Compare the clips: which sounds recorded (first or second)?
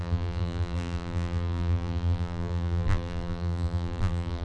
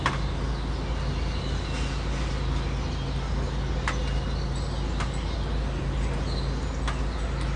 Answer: second